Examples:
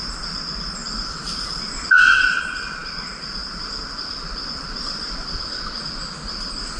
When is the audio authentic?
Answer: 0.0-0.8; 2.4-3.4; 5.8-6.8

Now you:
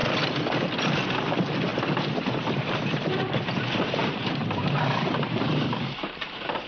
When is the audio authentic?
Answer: 0.0-0.8

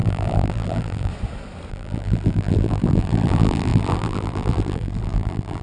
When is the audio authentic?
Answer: 1.1-1.7

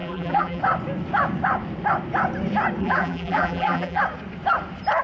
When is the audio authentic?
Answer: 0.6-2.8; 4.0-5.0

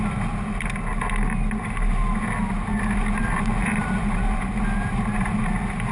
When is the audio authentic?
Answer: 0.0-3.2; 5.5-5.9